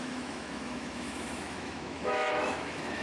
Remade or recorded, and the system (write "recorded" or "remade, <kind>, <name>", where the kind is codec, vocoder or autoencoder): remade, autoencoder, DAC-VAE